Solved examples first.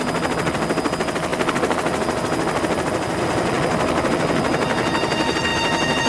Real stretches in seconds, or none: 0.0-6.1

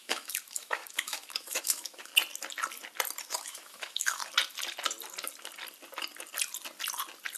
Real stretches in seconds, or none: 2.1-3.2; 4.2-7.4

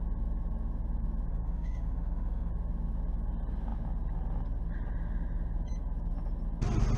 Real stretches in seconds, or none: 0.0-1.3; 2.5-7.0

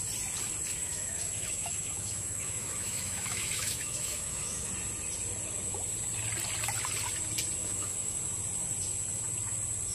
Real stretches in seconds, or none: 0.0-0.8; 4.7-7.6; 8.2-9.9

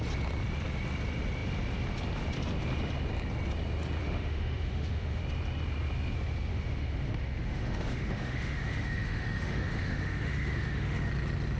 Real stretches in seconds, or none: 0.0-4.0; 5.2-6.5; 11.1-11.6

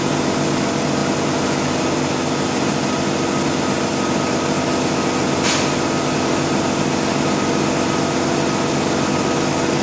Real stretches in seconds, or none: 0.0-9.8